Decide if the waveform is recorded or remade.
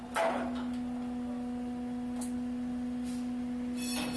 recorded